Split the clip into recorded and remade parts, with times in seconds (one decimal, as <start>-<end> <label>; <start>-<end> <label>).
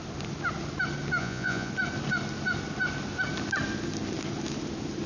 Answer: 0.0-1.2 recorded; 1.2-1.7 remade; 1.7-5.1 recorded